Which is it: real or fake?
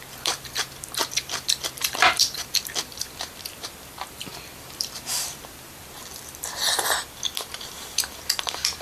fake